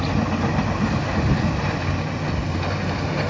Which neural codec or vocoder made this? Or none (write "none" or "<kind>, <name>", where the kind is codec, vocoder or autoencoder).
none